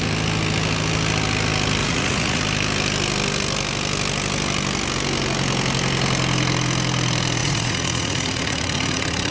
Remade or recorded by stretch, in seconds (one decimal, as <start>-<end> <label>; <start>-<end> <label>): 0.0-1.8 recorded; 1.8-2.4 remade; 2.4-7.4 recorded; 7.4-9.3 remade